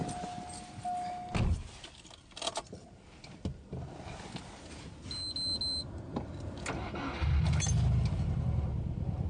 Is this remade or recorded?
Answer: recorded